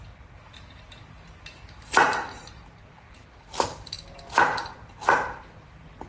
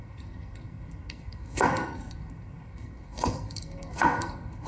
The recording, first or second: first